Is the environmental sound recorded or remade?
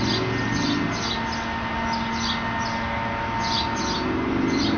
recorded